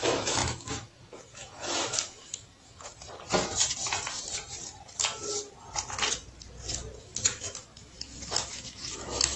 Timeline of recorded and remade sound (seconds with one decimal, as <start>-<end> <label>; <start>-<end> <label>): 0.0-2.9 remade; 2.9-7.0 recorded; 7.0-9.4 remade